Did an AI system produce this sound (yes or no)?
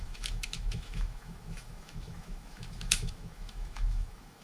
yes